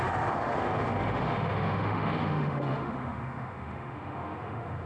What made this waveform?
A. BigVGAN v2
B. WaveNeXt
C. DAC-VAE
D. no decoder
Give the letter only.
C